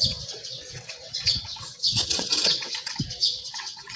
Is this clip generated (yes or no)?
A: yes